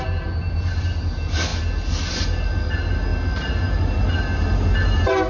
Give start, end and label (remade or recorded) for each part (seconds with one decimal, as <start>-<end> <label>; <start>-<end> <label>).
0.0-5.3 recorded